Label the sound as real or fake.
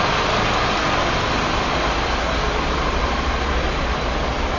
real